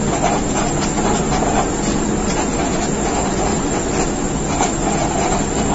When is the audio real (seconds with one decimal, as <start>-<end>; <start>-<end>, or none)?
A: 0.0-5.7